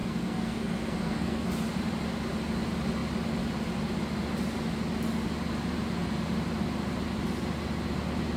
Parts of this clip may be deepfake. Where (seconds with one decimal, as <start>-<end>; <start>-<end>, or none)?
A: 0.0-1.5